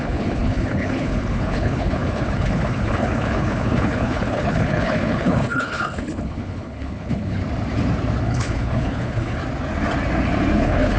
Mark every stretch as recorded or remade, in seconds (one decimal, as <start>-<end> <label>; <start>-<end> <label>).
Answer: 0.0-7.4 remade; 7.4-8.2 recorded; 8.2-9.4 remade; 9.4-10.6 recorded; 10.6-11.0 remade